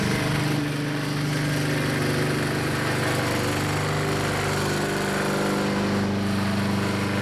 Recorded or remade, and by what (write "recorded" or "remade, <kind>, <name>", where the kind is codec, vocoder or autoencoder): recorded